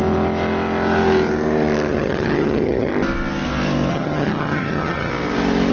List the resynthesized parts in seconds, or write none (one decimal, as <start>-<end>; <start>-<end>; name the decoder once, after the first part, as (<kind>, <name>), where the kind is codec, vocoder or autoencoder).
1.9-2.9 (vocoder, HiFi-GAN); 3.9-5.1